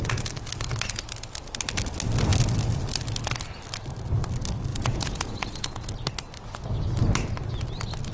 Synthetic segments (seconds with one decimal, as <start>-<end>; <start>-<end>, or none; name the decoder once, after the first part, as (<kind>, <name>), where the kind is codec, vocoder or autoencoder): 4.7-5.9 (vocoder, Vocos)